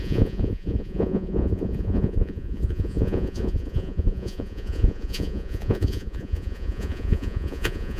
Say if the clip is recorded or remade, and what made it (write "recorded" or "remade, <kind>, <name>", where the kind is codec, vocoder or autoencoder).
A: remade, vocoder, Vocos